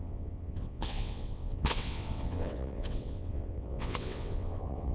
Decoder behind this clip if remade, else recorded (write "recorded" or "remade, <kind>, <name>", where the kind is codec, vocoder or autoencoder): remade, vocoder, WaveNeXt